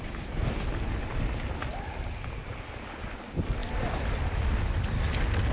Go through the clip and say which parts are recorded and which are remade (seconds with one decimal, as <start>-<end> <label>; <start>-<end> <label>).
0.0-0.4 recorded; 0.4-1.0 remade; 1.0-1.7 recorded; 1.7-2.5 remade; 2.5-3.6 recorded; 3.6-4.8 remade; 4.8-5.5 recorded